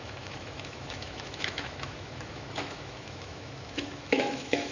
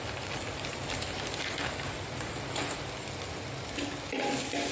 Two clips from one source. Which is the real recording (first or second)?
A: second